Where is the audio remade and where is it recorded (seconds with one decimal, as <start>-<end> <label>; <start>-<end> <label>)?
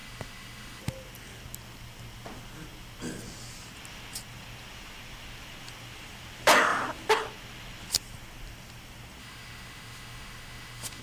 0.0-0.8 remade; 0.8-9.2 recorded; 9.2-11.0 remade